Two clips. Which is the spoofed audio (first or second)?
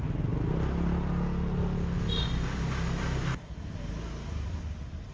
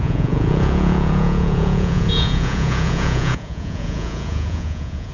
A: second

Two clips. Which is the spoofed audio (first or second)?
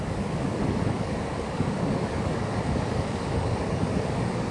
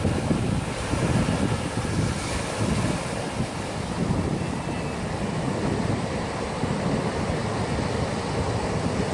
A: first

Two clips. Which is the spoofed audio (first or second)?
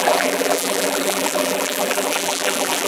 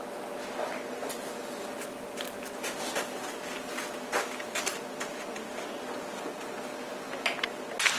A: first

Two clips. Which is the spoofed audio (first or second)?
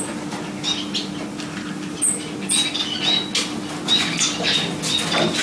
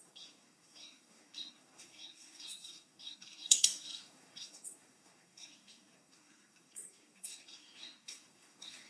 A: second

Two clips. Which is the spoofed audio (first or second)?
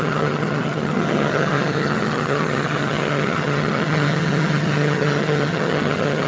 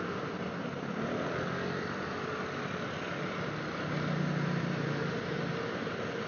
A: first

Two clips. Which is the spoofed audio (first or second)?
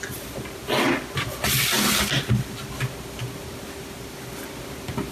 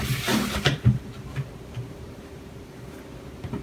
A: second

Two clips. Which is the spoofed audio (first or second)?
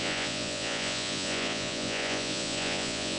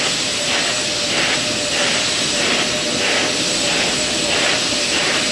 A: first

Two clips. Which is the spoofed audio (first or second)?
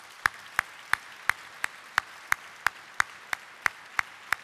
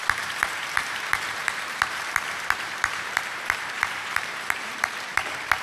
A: second